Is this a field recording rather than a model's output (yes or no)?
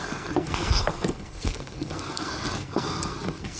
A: no